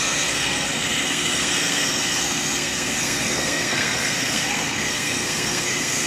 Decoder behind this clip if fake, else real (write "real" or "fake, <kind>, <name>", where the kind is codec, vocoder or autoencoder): fake, codec, SNAC